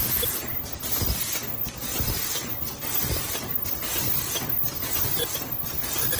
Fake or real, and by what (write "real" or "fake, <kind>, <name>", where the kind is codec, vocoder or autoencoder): fake, vocoder, BigVGAN v2